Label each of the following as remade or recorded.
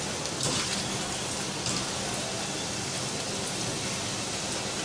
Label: recorded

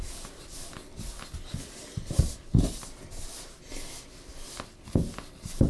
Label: recorded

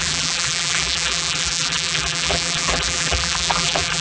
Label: remade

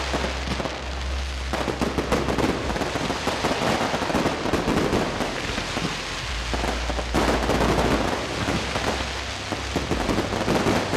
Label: recorded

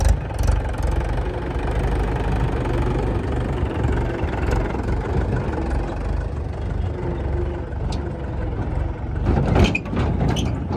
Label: recorded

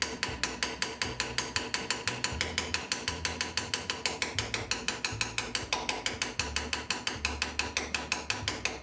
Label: recorded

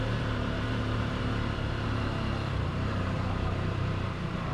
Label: remade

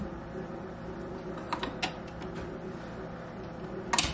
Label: recorded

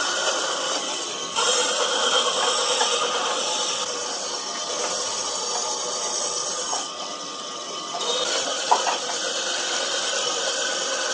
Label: remade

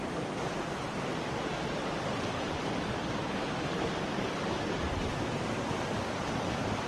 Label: recorded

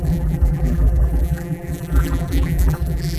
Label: remade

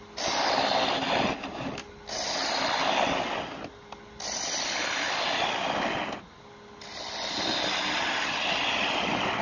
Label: recorded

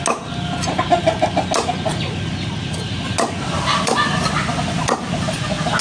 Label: recorded